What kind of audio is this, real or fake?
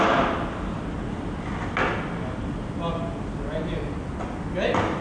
real